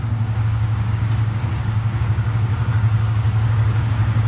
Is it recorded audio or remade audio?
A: remade